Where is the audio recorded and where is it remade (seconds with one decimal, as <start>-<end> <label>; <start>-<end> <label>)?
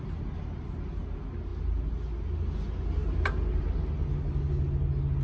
0.0-5.2 recorded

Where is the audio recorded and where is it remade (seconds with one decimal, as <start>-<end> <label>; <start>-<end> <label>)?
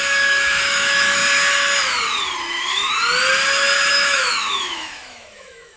0.0-1.2 remade; 1.2-2.5 recorded; 2.5-3.0 remade; 3.0-3.9 recorded; 3.9-5.8 remade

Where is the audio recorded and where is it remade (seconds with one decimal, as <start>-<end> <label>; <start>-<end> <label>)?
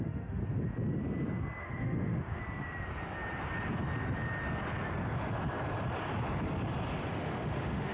0.0-0.4 remade; 0.4-1.6 recorded; 1.6-2.4 remade; 2.4-7.1 recorded; 7.1-7.9 remade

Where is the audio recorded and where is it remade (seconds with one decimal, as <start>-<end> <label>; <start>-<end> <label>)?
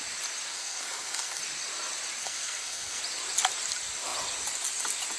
0.0-0.5 recorded; 0.5-1.4 remade; 1.4-2.2 recorded; 2.2-3.0 remade; 3.0-5.2 recorded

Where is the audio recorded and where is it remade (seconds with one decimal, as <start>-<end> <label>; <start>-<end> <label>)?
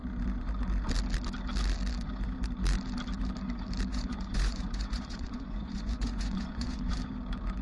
0.0-3.9 recorded; 3.9-7.0 remade; 7.0-7.6 recorded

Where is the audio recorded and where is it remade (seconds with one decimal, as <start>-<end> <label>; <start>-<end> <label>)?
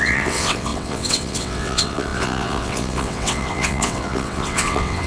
0.0-5.1 remade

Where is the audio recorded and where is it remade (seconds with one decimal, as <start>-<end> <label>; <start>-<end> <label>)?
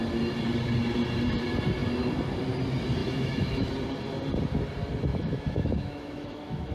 0.0-3.0 recorded; 3.0-3.7 remade; 3.7-5.1 recorded; 5.1-6.7 remade